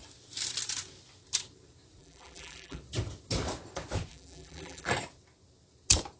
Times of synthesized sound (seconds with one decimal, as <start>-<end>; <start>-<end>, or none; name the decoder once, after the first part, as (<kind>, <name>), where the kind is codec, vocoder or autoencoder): 2.0-2.8 (vocoder, BigVGAN v2); 4.1-4.9